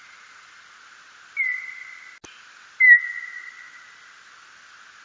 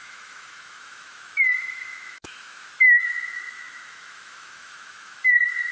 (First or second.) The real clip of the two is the first